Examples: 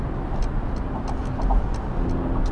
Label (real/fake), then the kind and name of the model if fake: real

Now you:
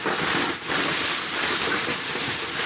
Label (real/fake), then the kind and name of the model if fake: real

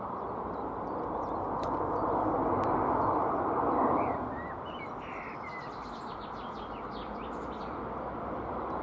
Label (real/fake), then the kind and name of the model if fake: fake, vocoder, BigVGAN v2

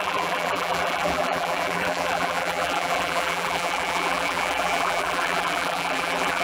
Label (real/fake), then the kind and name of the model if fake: fake, vocoder, BigVGAN v2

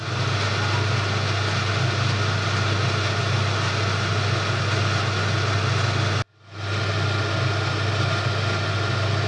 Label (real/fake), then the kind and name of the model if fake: real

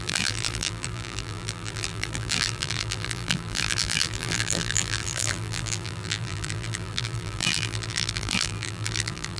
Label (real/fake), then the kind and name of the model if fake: fake, vocoder, BigVGAN v2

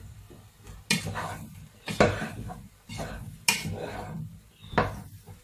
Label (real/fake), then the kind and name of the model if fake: real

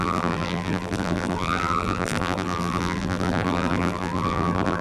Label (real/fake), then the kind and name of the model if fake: fake, vocoder, BigVGAN v2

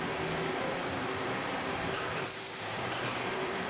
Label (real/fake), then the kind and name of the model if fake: fake, vocoder, BigVGAN v2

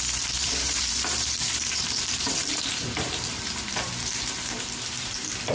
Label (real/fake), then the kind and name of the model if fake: fake, vocoder, BigVGAN v2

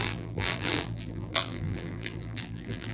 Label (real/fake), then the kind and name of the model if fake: fake, vocoder, BigVGAN v2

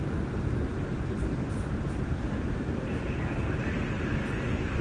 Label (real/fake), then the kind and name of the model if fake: fake, vocoder, BigVGAN v2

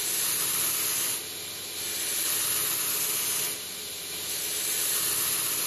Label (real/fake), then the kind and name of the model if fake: real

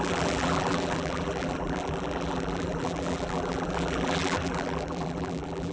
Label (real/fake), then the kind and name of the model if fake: fake, vocoder, BigVGAN v2